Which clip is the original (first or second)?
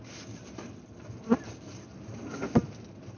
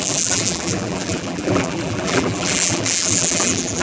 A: first